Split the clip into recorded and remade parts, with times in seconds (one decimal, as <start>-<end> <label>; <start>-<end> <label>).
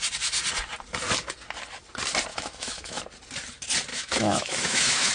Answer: 0.0-2.3 recorded; 2.3-3.0 remade; 3.0-3.9 recorded; 3.9-5.1 remade